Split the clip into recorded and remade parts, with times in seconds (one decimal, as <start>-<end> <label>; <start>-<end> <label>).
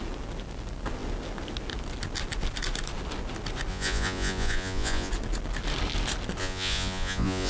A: 0.0-3.7 recorded; 3.7-5.1 remade; 5.1-6.4 recorded; 6.4-7.5 remade